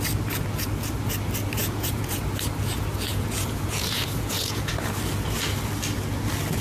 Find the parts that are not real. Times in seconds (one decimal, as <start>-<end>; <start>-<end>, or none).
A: 1.6-2.2; 3.1-4.7